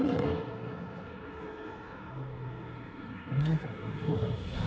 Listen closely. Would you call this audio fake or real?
fake